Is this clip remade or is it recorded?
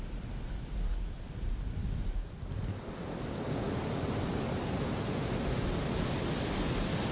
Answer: recorded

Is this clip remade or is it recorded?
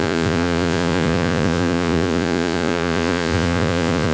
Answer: remade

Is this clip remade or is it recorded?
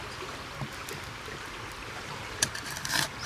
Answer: remade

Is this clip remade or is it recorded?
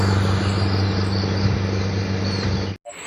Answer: recorded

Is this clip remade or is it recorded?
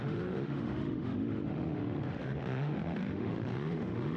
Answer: remade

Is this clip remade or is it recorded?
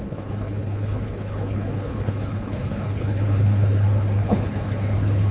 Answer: remade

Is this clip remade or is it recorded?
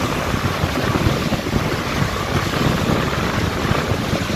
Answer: recorded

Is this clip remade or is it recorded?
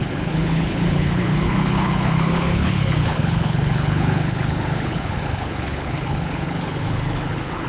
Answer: remade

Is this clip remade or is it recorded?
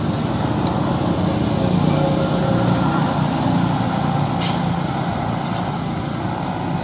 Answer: recorded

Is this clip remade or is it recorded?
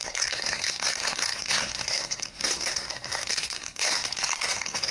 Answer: remade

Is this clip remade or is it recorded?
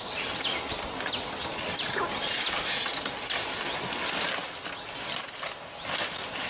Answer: recorded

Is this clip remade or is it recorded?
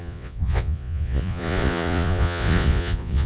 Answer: remade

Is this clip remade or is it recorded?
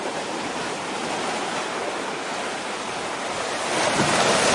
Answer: remade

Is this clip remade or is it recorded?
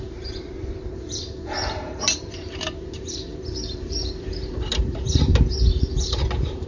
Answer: remade